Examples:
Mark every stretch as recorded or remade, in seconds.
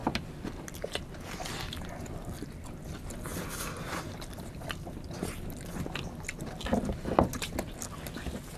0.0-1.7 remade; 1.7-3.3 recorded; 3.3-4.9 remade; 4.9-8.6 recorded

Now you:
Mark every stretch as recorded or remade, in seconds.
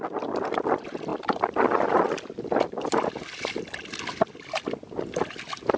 0.0-5.8 recorded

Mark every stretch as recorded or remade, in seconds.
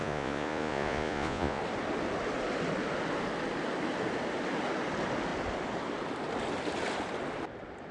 0.0-1.6 remade; 1.6-7.9 recorded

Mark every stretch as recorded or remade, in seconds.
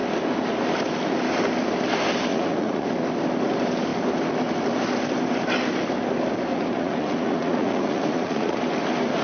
0.0-2.3 recorded; 2.3-2.9 remade; 2.9-6.5 recorded; 6.5-8.6 remade; 8.6-9.2 recorded